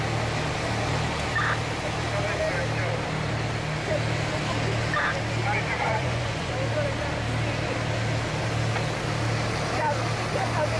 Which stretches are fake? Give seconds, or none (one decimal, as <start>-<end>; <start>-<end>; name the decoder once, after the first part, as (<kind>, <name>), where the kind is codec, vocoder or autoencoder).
5.8-6.5 (vocoder, Vocos)